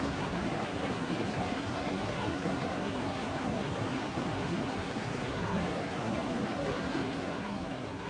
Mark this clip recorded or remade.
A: remade